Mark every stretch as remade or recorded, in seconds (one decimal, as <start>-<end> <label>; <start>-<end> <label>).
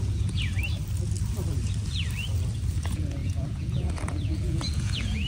0.0-0.6 remade; 0.6-2.7 recorded; 2.7-5.3 remade